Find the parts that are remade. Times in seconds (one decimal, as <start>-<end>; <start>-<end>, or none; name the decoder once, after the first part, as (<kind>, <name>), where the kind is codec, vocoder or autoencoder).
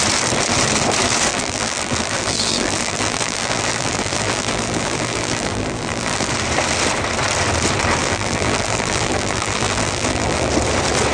1.3-6.3 (vocoder, BigVGAN v2); 8.0-10.5